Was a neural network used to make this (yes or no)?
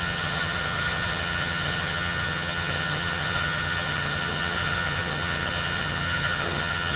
yes